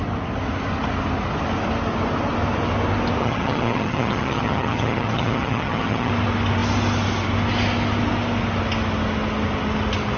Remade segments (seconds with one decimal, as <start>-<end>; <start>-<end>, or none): 3.2-6.1